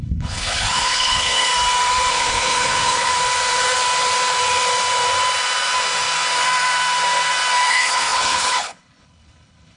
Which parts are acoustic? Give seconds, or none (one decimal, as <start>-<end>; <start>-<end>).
1.5-2.1; 3.1-7.7